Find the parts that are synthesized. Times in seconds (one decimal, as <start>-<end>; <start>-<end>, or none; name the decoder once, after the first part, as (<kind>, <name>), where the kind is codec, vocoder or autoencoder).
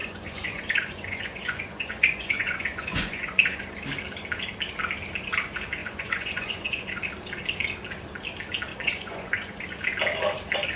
0.0-3.7 (vocoder, Vocos); 5.8-7.0; 8.7-9.6